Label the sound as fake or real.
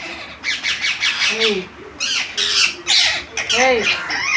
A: real